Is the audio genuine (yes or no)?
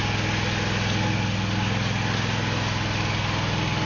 yes